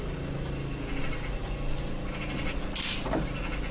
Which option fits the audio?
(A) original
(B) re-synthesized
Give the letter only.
A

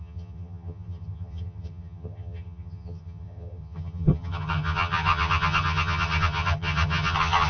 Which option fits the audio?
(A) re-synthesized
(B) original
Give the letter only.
A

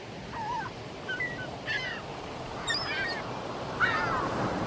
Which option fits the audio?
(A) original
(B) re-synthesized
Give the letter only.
B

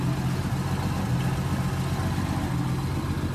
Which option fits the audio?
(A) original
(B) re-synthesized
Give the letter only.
A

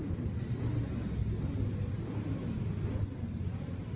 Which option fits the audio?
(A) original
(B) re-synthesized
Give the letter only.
A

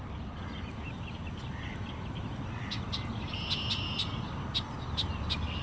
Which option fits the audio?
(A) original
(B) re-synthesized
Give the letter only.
A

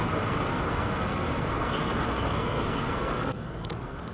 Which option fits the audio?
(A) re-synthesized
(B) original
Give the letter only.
A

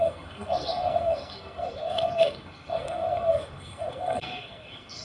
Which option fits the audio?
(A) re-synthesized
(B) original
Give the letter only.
A